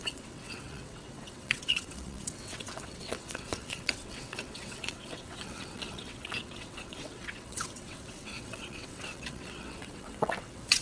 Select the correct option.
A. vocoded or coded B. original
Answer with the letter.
A